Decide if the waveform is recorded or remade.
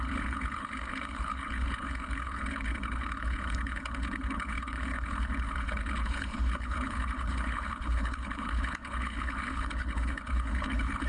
remade